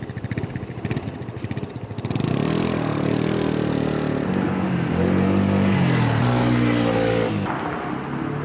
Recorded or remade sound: recorded